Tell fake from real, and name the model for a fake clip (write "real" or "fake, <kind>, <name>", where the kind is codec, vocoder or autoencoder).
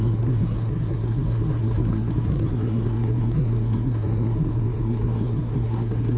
fake, codec, SNAC